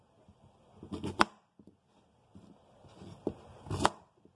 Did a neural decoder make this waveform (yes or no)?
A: no